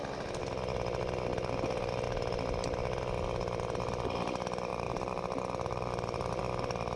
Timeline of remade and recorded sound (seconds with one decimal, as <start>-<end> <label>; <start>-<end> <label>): 0.0-1.3 recorded; 1.3-2.4 remade; 2.4-4.7 recorded; 4.7-6.4 remade; 6.4-7.0 recorded